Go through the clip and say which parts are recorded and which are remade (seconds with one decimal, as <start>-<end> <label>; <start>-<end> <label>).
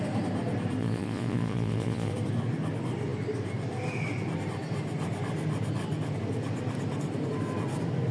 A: 0.0-0.8 recorded; 0.8-2.1 remade; 2.1-8.1 recorded